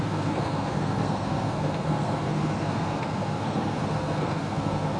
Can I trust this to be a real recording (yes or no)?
no